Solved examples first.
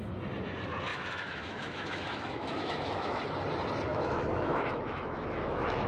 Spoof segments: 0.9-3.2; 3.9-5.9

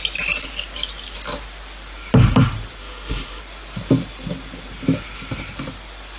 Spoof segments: 2.8-3.4

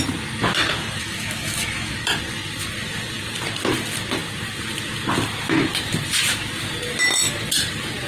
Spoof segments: 1.0-1.9